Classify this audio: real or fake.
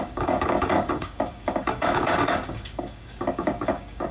fake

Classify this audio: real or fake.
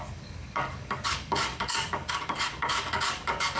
fake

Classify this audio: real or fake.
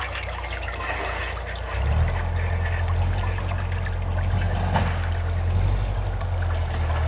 real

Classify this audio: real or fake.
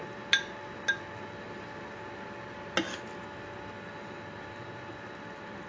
real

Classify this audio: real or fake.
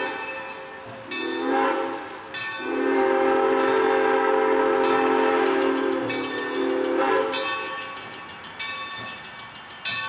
real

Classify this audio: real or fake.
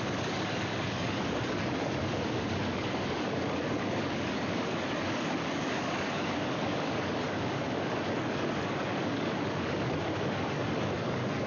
fake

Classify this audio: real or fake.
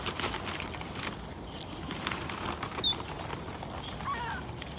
real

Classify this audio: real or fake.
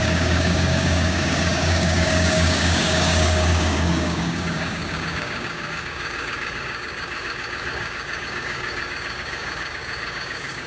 fake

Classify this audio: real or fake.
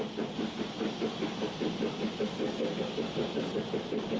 real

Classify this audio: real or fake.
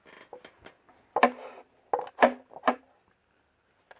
real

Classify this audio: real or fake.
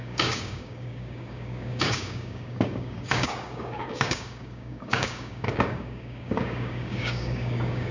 fake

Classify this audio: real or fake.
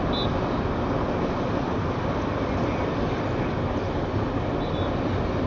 real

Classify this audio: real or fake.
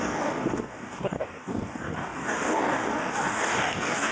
fake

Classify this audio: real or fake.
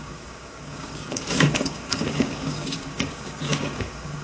fake